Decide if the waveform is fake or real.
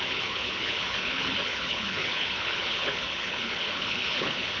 fake